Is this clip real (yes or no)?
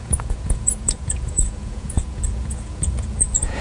no